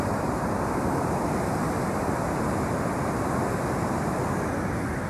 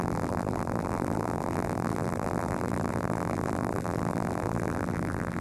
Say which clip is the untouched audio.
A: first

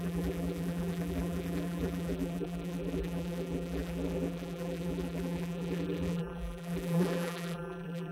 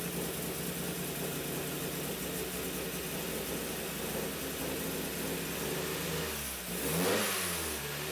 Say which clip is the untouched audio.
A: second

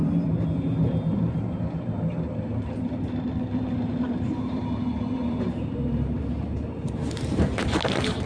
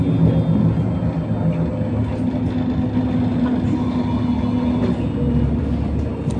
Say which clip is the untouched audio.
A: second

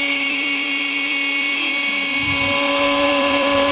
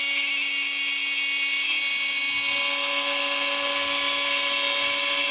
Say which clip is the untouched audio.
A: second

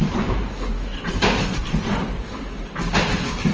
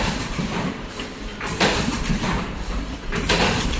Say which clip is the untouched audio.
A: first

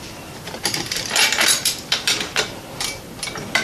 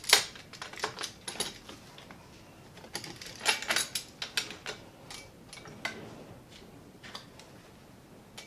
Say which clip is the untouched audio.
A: second